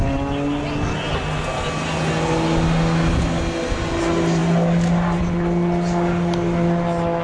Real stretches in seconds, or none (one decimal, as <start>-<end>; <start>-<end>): 0.0-7.2